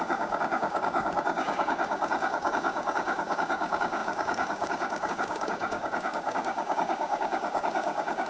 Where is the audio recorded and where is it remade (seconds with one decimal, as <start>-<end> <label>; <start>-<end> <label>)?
0.0-8.3 remade